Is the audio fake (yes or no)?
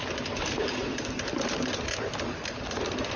no